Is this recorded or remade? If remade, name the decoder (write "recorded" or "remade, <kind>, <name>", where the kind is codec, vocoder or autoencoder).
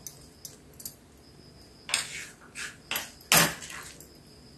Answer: recorded